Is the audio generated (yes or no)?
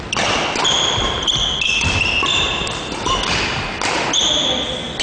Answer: no